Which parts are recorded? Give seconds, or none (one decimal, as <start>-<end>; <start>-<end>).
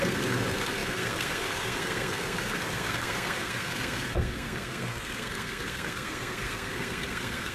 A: none